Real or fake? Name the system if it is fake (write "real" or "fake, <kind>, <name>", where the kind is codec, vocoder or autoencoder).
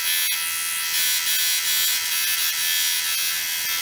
real